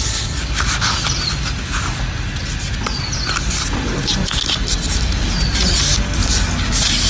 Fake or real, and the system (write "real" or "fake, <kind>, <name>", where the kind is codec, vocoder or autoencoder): real